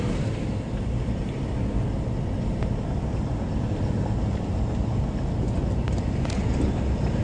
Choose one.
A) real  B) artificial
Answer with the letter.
A